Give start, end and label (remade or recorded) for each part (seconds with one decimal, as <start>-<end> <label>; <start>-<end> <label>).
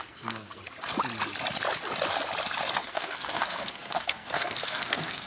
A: 0.0-0.6 remade; 0.6-2.8 recorded; 2.8-5.3 remade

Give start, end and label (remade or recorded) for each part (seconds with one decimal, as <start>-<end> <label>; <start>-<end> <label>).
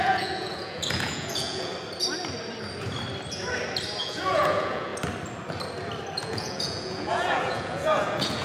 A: 0.0-1.7 remade; 1.7-4.0 recorded; 4.0-4.9 remade; 4.9-6.2 recorded; 6.2-8.4 remade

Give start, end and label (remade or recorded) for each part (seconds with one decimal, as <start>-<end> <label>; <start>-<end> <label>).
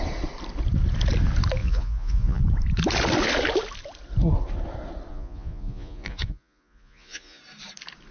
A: 0.0-1.6 recorded; 1.6-2.4 remade; 2.4-5.1 recorded; 5.1-7.4 remade; 7.4-8.1 recorded